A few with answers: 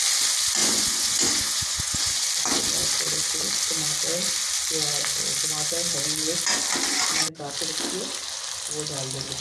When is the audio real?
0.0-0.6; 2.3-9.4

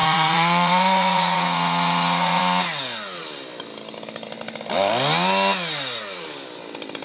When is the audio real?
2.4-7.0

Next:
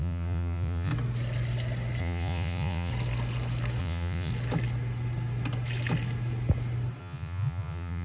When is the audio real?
0.9-2.0; 2.9-3.8; 4.3-7.0

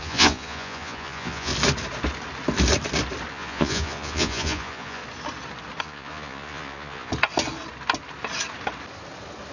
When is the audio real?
1.5-3.3; 5.0-5.8; 7.1-9.5

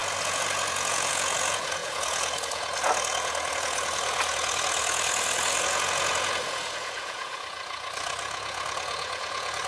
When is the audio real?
none

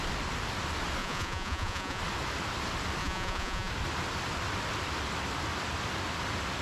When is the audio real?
0.0-1.0; 2.0-3.0; 3.7-6.6